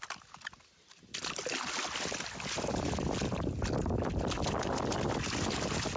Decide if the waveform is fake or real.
real